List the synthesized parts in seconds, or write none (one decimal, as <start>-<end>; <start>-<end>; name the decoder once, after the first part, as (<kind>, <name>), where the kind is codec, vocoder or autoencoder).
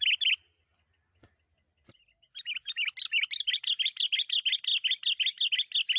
none